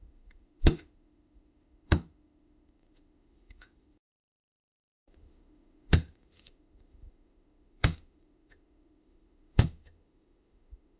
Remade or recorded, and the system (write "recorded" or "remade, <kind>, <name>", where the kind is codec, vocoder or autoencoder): remade, autoencoder, DAC-VAE